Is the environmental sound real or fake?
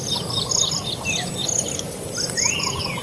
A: real